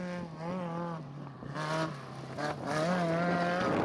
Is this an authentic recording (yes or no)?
yes